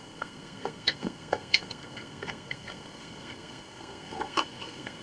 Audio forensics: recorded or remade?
remade